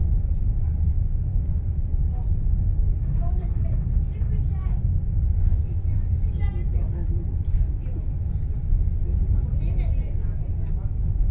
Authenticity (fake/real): real